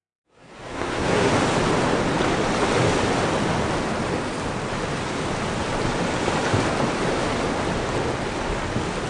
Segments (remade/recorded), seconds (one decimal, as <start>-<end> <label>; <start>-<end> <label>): 0.0-1.3 remade; 1.3-9.1 recorded